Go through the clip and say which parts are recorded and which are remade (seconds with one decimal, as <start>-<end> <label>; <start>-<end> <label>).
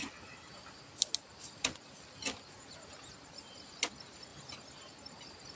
0.0-5.6 recorded